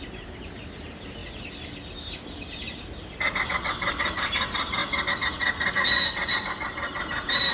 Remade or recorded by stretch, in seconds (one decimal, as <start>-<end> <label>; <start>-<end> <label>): 0.0-1.2 remade; 1.2-3.0 recorded; 3.0-4.8 remade; 4.8-7.0 recorded; 7.0-7.5 remade